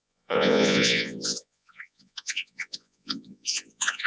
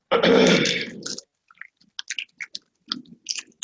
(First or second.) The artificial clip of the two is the first